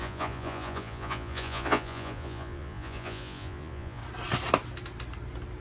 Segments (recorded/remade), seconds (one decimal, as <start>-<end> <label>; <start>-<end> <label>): 0.0-4.0 remade; 4.0-5.6 recorded